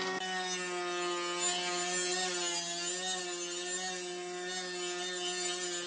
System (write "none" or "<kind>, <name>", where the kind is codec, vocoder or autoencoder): none